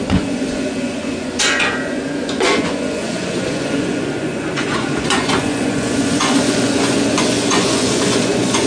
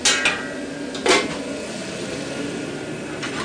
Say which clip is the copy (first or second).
first